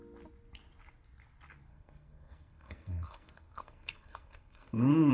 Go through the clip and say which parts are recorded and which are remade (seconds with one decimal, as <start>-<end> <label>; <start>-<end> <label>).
0.0-1.7 recorded; 1.7-5.1 remade